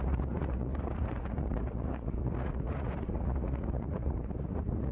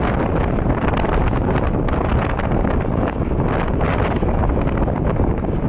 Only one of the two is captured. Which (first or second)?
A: second